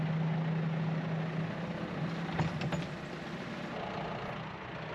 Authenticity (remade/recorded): recorded